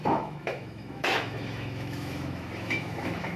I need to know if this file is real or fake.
fake